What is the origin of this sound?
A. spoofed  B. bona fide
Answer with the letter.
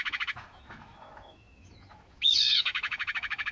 A